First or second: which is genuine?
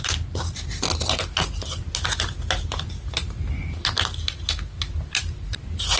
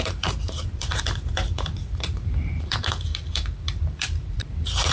first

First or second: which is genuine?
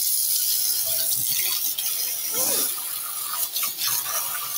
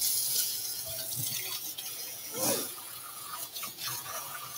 first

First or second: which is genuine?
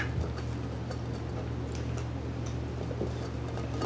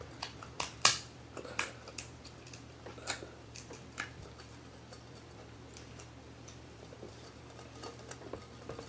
first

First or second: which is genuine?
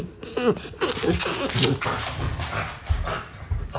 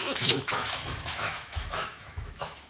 first